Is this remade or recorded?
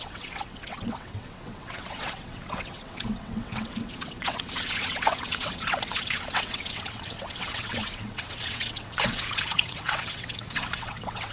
remade